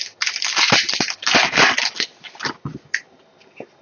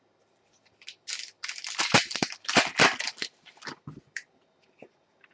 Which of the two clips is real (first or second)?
first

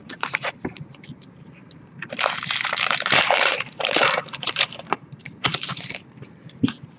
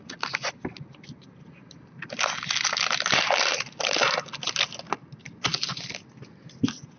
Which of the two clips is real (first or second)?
second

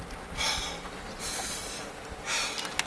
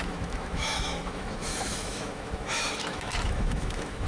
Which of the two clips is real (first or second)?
first